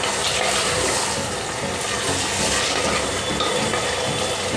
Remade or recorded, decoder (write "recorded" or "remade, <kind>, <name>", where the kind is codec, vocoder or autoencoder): recorded